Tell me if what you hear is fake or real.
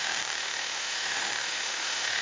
fake